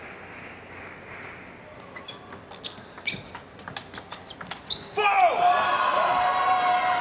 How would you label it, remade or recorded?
recorded